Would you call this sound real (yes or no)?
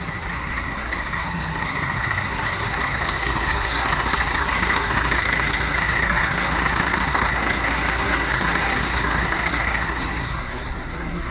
no